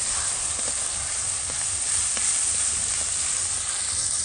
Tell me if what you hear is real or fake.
real